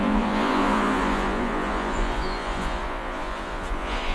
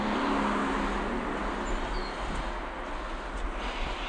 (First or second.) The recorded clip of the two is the second